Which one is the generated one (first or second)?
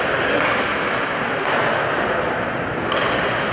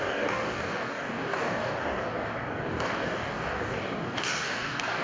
second